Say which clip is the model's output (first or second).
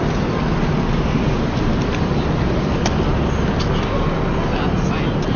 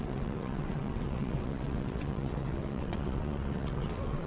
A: second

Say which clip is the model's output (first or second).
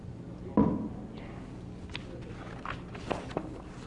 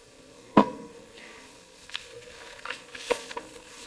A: second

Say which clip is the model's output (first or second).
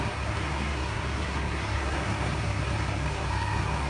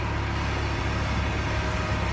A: first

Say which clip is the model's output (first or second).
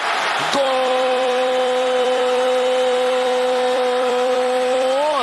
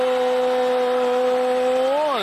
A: first